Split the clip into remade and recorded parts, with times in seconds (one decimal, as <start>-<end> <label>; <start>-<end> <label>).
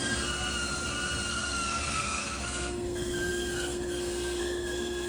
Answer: 0.0-1.3 recorded; 1.3-5.1 remade